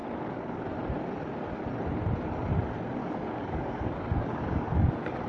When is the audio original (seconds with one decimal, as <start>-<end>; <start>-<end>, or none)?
0.6-3.0